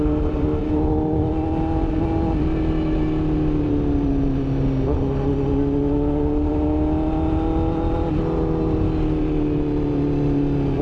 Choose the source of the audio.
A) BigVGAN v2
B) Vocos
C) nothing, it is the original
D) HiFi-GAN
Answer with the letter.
C